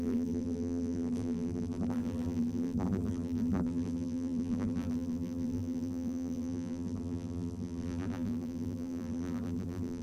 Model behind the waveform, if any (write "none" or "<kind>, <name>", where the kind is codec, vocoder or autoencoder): vocoder, BigVGAN v2